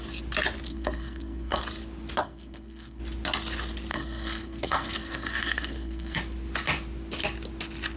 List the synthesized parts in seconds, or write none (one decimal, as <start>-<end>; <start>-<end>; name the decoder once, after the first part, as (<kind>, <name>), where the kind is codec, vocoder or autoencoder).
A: 0.7-1.6 (codec, SNAC); 2.2-3.0; 3.9-6.2